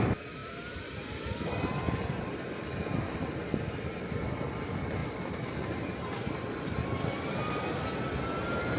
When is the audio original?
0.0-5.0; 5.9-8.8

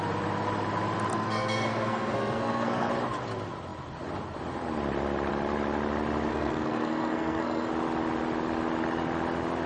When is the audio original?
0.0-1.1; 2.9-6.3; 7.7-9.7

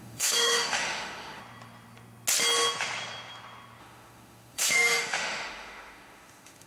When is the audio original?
1.4-3.8

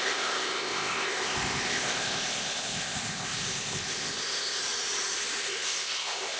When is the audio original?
4.6-5.4

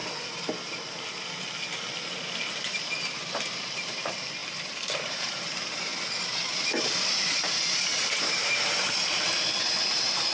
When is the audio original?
0.0-2.8; 5.9-6.8

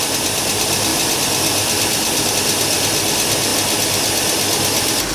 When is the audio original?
0.0-0.9; 2.3-5.1

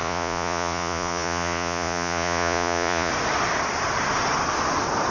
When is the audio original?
3.1-5.1